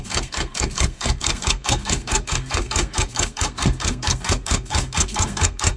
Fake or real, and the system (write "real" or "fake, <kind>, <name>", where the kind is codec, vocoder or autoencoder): fake, codec, SNAC